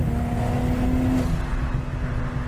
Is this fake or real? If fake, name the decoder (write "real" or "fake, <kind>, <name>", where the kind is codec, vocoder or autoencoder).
real